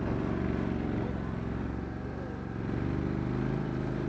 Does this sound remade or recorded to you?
recorded